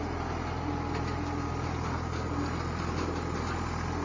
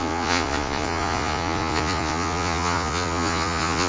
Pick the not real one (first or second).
second